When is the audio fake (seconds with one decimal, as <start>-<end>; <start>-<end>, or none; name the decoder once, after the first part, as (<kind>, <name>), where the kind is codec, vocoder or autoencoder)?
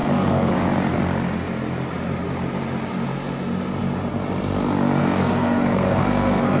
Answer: 0.0-0.5 (codec, SNAC); 5.0-6.6